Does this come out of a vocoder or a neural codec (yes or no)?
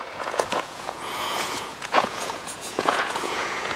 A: yes